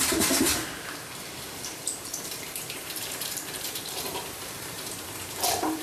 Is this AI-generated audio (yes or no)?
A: yes